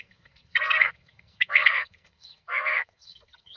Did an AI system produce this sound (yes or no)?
yes